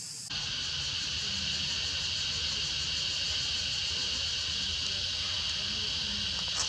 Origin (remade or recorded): recorded